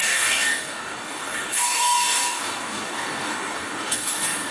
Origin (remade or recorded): remade